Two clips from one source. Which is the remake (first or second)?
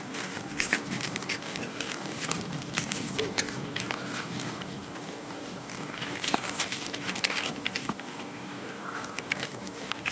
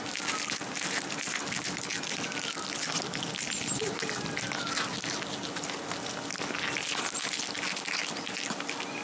first